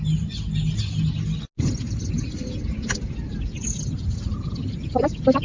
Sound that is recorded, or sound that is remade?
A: recorded